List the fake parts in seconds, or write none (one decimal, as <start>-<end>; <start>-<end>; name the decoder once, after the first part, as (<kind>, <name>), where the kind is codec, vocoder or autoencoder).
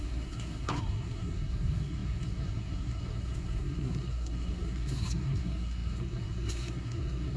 0.0-7.4 (codec, SNAC)